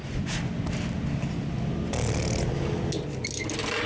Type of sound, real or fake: real